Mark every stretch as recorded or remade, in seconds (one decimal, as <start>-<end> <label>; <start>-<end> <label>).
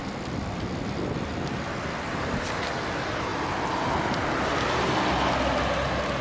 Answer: 0.0-2.1 recorded; 2.1-2.6 remade; 2.6-6.2 recorded